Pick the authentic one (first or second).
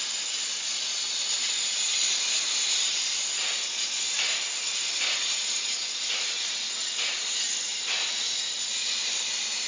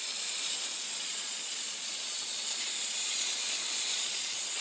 first